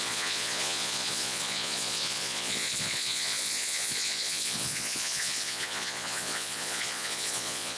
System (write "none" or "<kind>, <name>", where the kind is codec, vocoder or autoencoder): vocoder, Vocos